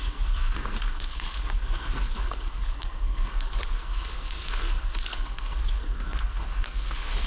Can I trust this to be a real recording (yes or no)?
no